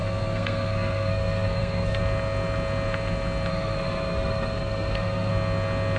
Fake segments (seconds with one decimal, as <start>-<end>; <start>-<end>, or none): 0.0-2.0; 3.5-5.3